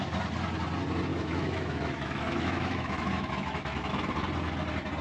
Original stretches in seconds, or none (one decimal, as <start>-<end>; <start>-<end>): 0.0-1.1; 4.1-5.0

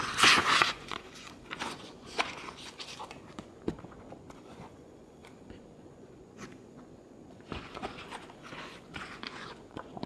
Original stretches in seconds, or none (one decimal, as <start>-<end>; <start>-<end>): none

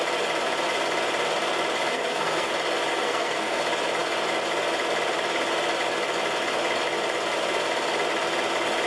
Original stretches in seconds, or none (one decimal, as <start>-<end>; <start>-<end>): 0.0-1.9; 2.5-2.9; 3.6-8.9

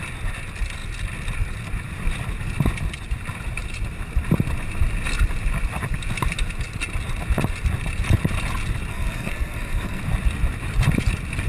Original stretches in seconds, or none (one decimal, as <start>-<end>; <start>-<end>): 0.0-8.9; 10.0-11.5

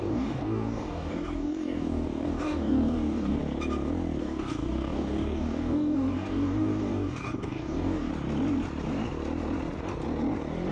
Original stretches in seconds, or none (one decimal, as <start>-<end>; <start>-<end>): 3.4-4.2; 8.1-10.7

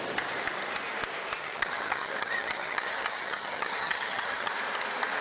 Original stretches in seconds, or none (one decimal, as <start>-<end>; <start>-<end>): 0.0-1.4; 4.5-5.2

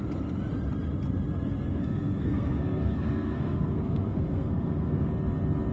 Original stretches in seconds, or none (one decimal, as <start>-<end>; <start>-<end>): 0.0-1.7; 5.1-5.7